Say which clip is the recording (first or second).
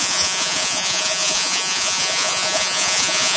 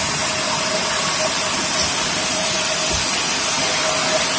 second